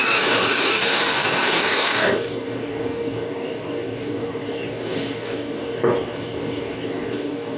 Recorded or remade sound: remade